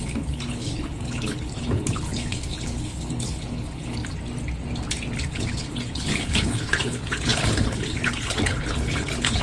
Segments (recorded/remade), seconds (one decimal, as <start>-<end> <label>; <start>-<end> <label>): 0.0-4.0 remade; 4.0-5.3 recorded; 5.3-9.4 remade